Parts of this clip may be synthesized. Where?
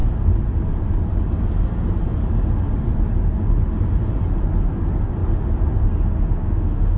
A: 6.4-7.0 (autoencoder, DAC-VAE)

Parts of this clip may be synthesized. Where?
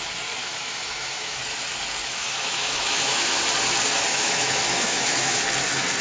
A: 0.4-1.4 (autoencoder, DAC-VAE); 2.0-3.4; 4.1-5.4